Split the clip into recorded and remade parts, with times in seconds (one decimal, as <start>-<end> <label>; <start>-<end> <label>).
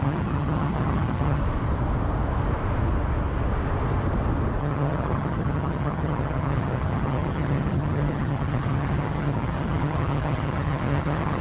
0.0-1.4 remade; 1.4-4.6 recorded; 4.6-11.4 remade